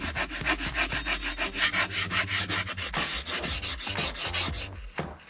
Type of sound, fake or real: real